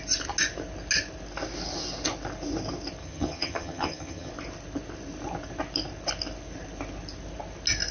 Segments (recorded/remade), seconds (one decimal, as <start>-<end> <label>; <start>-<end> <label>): 0.0-3.0 recorded; 3.0-4.3 remade; 4.3-7.9 recorded